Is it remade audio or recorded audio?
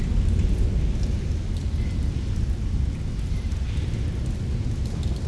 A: recorded